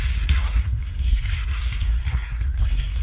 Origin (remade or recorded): remade